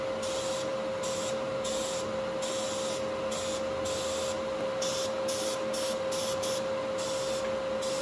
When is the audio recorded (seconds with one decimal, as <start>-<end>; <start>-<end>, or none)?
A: 0.0-8.0